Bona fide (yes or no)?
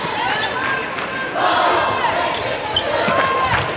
no